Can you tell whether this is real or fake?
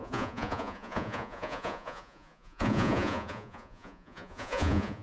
fake